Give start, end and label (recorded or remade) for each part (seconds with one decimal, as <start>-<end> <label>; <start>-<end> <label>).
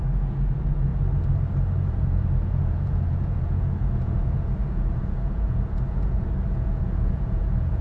0.0-0.9 remade; 0.9-1.9 recorded; 1.9-7.8 remade